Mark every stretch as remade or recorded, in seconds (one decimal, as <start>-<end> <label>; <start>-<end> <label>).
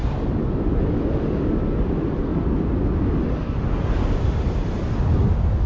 0.0-5.7 recorded